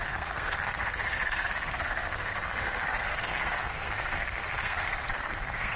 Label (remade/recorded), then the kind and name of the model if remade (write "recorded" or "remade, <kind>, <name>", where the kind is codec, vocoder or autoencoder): remade, codec, SNAC